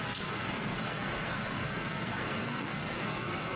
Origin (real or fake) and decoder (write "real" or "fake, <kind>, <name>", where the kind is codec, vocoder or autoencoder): fake, codec, SNAC